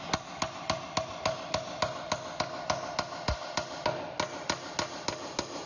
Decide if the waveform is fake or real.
real